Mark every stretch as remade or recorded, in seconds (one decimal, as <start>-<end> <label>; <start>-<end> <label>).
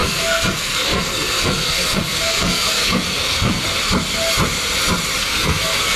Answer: 0.0-3.6 remade; 3.6-5.2 recorded; 5.2-6.0 remade